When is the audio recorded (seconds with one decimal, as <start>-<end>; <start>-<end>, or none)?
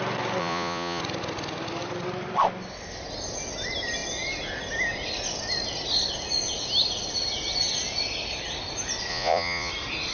0.0-0.4; 1.0-9.1; 9.7-10.1